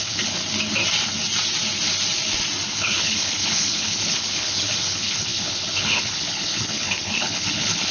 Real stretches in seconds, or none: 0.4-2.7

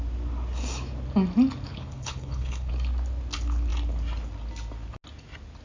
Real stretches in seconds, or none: 0.0-1.7; 2.7-5.6

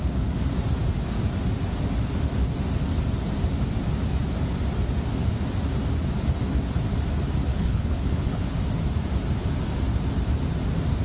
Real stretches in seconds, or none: 0.0-7.5; 8.7-11.0

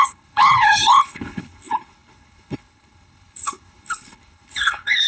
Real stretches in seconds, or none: none

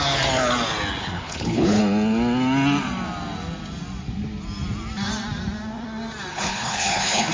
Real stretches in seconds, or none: 0.0-1.0; 1.8-6.3

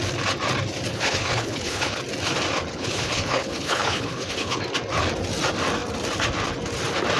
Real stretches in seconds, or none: 0.0-0.9; 2.0-2.7; 4.6-7.2

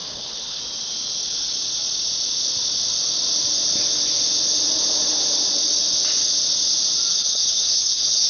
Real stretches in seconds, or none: 0.6-7.1